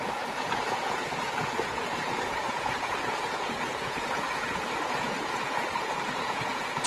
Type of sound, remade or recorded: remade